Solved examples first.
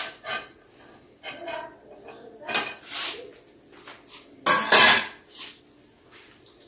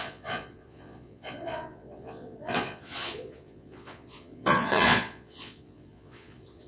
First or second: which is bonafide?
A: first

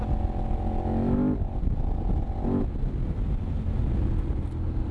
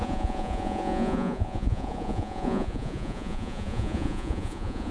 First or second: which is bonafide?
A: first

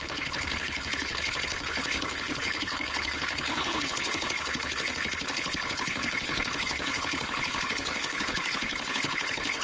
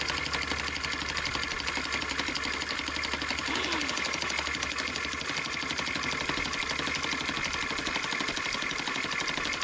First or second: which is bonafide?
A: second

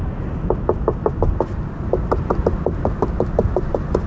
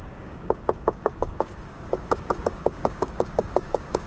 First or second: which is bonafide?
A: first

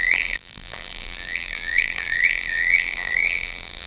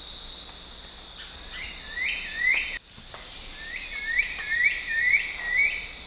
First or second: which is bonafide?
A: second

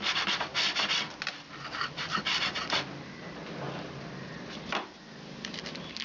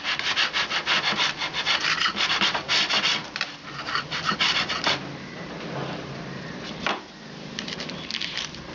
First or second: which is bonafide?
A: first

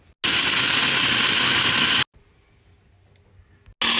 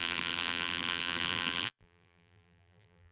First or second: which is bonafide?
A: first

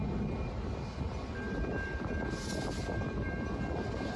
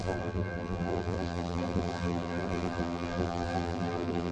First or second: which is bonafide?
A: first